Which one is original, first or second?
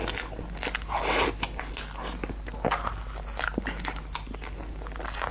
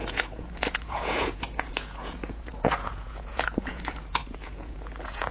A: first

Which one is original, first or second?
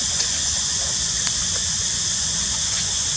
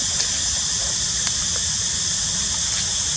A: second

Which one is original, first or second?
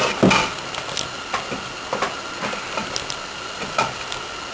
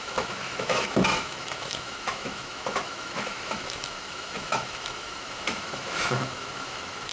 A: first